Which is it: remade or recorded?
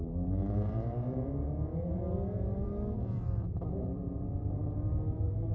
remade